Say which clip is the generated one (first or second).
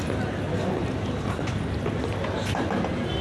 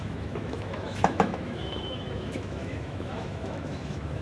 second